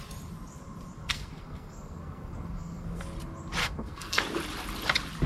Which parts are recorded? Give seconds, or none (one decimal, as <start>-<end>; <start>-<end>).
0.0-1.0; 3.0-3.6; 4.2-5.3